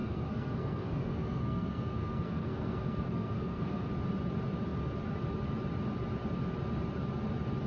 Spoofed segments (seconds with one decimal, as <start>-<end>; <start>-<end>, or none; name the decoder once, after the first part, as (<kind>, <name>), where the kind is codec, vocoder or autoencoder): 0.0-3.9 (codec, SNAC)